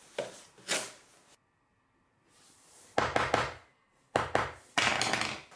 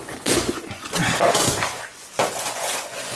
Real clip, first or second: first